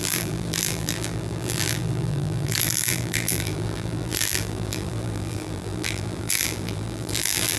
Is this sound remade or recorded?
remade